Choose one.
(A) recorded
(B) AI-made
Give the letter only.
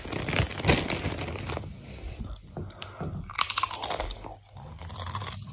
A